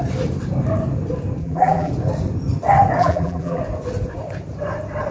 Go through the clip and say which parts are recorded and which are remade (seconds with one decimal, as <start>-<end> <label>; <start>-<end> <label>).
0.0-1.4 recorded; 1.4-1.9 remade; 1.9-3.0 recorded; 3.0-3.6 remade; 3.6-5.1 recorded